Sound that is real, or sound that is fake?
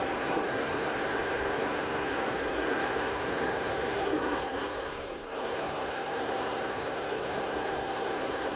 fake